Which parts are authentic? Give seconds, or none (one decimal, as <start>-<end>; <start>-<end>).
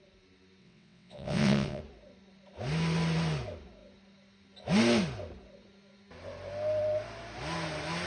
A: 0.0-0.6; 1.8-8.1